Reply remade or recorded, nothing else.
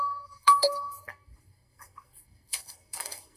remade